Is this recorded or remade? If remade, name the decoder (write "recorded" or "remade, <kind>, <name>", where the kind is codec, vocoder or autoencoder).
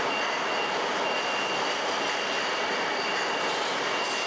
recorded